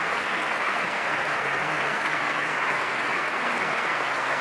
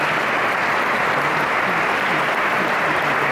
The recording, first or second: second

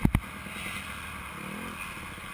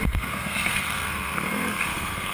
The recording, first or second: first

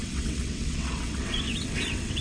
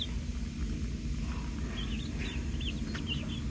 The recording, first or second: second